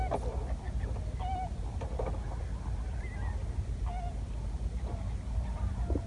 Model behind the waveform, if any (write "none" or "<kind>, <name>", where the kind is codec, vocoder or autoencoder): none